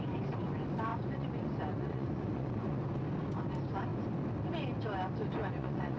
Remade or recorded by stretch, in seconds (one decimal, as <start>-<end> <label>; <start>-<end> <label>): 0.0-0.9 recorded; 0.9-2.8 remade; 2.8-5.4 recorded; 5.4-6.0 remade